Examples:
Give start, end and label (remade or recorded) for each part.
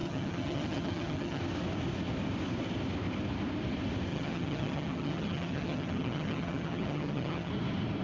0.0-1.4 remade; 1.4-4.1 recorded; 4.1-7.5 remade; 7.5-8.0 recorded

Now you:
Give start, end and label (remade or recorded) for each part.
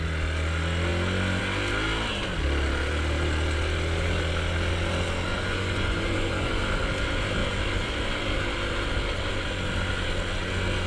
0.0-5.3 recorded; 5.3-6.6 remade; 6.6-10.9 recorded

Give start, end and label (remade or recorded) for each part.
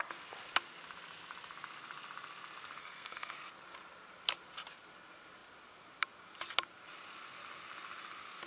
0.0-2.8 recorded; 2.8-3.3 remade; 3.3-8.5 recorded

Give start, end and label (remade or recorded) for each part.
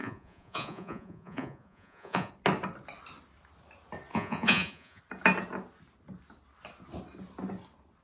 0.0-2.3 remade; 2.3-4.1 recorded; 4.1-5.0 remade; 5.0-8.0 recorded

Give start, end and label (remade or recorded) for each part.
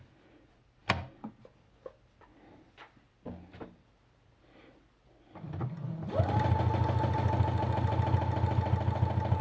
0.0-9.4 recorded